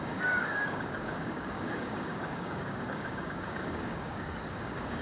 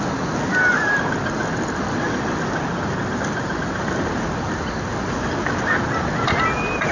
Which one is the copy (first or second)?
first